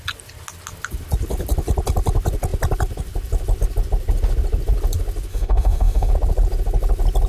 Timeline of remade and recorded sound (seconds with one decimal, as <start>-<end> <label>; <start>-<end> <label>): 0.0-5.3 recorded; 5.3-6.1 remade; 6.1-7.3 recorded